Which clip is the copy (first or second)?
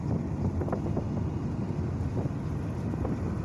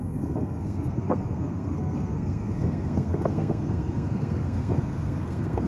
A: second